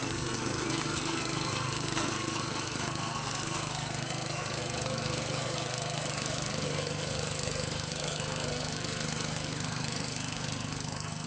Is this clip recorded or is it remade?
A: remade